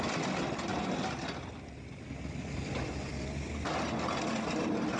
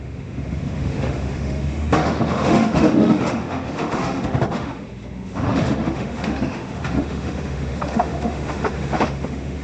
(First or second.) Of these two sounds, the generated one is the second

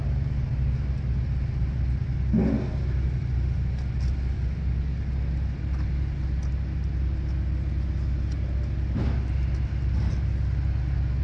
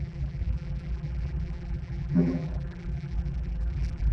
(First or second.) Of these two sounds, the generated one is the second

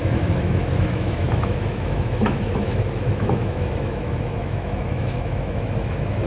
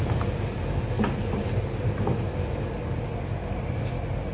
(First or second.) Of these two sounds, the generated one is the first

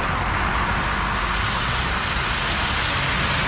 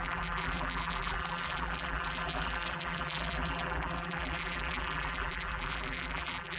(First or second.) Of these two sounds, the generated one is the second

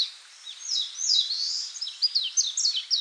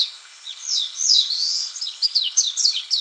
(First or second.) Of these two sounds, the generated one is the second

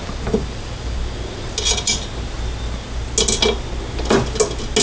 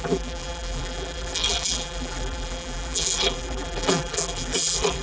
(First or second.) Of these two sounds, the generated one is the second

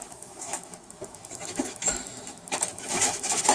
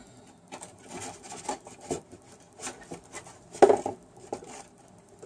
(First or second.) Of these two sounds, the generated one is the first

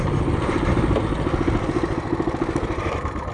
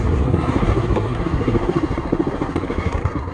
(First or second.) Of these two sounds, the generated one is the second